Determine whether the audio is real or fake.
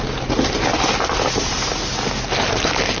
real